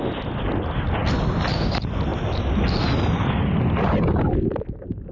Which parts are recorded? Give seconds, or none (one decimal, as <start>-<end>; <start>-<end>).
0.0-5.1